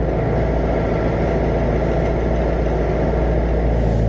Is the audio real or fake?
real